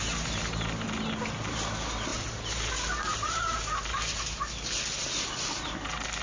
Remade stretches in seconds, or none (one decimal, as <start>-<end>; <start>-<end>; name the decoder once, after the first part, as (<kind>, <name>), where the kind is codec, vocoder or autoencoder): 2.1-2.7 (vocoder, BigVGAN v2); 3.1-4.2